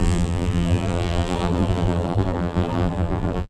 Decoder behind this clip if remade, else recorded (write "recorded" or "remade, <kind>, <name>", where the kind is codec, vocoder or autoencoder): remade, vocoder, BigVGAN v2